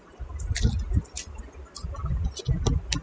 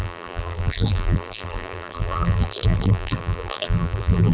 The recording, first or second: first